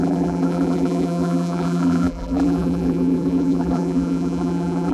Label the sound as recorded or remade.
remade